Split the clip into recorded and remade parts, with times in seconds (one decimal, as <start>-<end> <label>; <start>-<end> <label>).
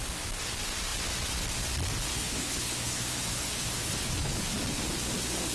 0.0-2.1 recorded; 2.1-4.4 remade; 4.4-5.5 recorded